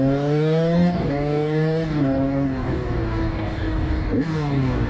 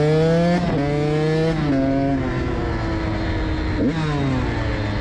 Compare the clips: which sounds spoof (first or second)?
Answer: first